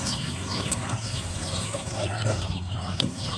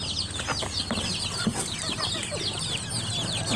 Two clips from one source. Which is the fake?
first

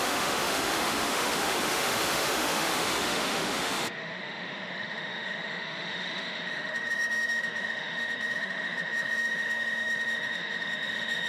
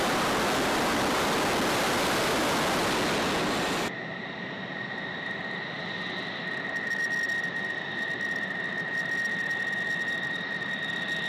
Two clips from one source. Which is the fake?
first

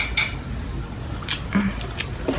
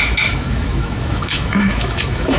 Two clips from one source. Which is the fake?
second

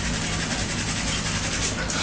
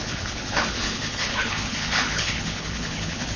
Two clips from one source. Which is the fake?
second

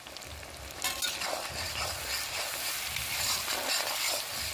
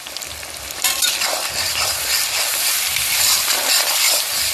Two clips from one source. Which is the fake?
second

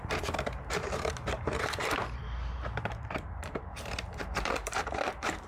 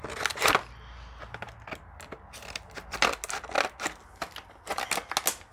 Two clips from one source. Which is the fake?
first